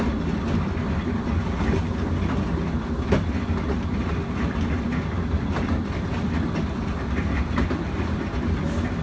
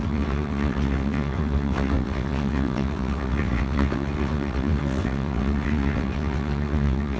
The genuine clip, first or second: first